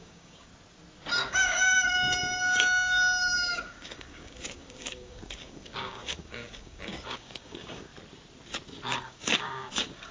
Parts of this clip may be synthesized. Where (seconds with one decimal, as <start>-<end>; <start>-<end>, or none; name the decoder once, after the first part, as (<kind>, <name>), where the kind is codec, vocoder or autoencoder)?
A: 0.0-0.5 (codec, DAC); 1.3-7.9; 9.0-10.1